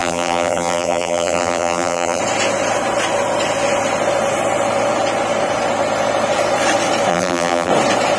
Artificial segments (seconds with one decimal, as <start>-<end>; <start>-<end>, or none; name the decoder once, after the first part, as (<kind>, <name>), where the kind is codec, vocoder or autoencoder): 0.0-2.2 (vocoder, BigVGAN v2); 7.1-7.7